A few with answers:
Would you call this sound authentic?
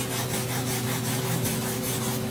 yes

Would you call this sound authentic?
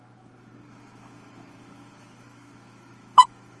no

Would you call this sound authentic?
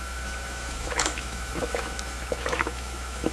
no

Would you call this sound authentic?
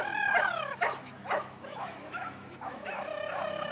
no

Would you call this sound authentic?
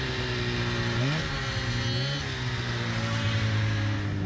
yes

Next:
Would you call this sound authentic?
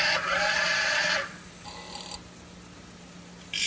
yes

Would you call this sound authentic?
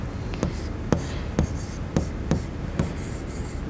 yes